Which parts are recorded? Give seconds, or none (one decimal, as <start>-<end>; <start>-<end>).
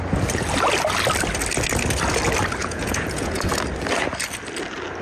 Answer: 0.0-2.6; 3.5-5.0